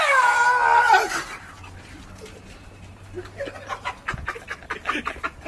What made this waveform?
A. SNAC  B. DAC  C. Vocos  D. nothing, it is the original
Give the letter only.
D